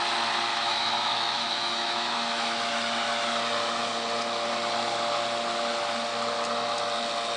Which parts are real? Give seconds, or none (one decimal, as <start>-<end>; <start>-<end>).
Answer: 0.0-0.5; 2.6-7.4